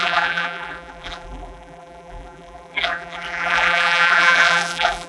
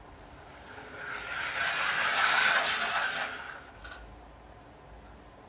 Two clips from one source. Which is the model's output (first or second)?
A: first